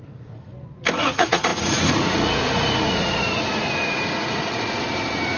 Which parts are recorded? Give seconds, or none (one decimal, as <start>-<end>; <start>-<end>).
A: 0.5-1.0